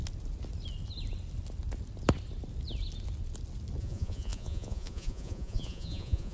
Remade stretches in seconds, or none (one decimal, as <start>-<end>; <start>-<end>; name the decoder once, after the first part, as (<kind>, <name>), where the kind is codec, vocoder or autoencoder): 3.8-6.3 (vocoder, Vocos)